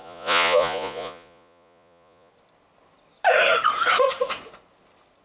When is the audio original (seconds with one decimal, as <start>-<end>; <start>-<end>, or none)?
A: 2.3-5.2